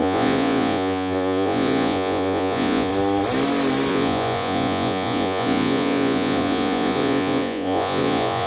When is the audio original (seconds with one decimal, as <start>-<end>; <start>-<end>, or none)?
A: 2.9-3.9